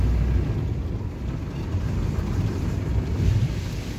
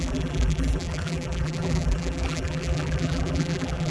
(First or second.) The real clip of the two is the first